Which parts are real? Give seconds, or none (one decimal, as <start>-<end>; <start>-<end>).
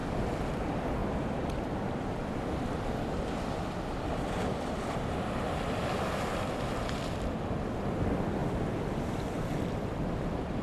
0.0-0.5; 8.4-9.6